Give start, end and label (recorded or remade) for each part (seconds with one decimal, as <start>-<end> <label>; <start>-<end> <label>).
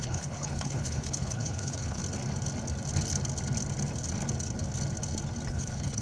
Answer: 0.0-2.0 remade; 2.0-5.5 recorded; 5.5-6.0 remade